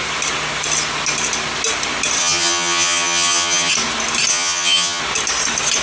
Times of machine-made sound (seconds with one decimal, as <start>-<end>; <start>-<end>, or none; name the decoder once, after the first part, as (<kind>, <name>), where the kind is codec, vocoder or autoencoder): 2.2-3.7 (vocoder, HiFi-GAN); 4.3-5.0